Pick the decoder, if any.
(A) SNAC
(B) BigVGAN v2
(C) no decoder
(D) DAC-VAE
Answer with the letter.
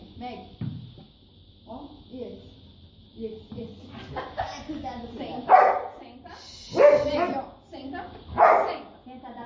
C